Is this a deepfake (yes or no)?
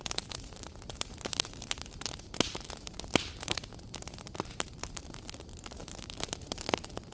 yes